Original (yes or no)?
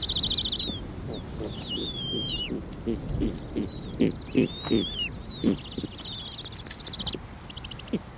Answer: yes